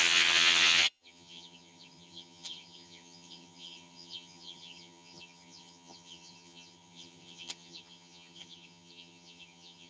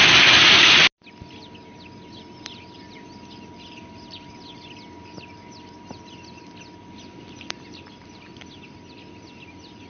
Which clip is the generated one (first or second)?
first